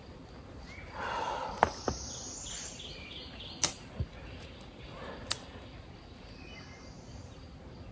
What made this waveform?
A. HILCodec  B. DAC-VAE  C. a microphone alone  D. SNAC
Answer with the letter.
C